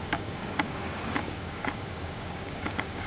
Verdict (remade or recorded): remade